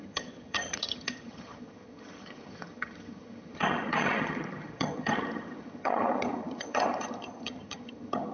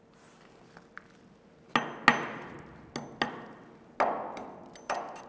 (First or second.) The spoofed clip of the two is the first